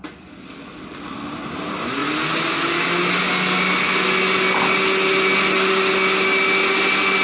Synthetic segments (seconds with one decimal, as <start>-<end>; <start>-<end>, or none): none